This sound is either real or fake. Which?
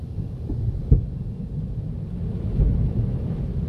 real